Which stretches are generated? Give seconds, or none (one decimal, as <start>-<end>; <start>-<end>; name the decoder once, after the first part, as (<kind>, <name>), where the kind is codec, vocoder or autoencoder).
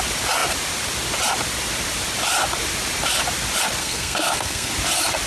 3.8-4.7 (codec, SNAC)